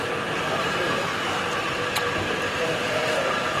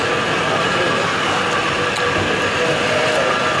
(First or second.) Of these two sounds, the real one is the second